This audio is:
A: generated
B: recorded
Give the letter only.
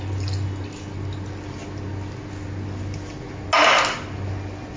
B